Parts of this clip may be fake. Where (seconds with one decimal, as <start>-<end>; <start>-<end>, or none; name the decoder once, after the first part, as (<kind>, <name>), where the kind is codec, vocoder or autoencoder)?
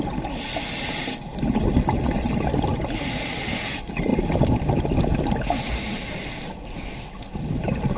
none